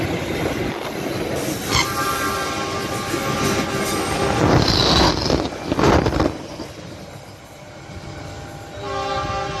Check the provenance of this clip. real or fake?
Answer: real